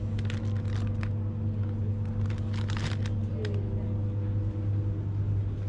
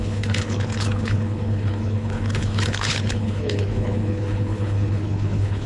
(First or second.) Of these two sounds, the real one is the first